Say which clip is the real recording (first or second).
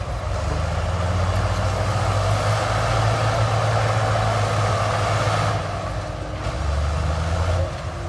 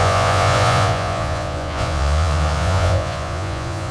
first